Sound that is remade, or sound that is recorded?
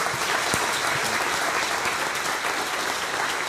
remade